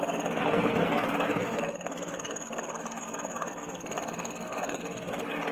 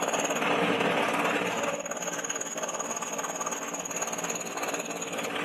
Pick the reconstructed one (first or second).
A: first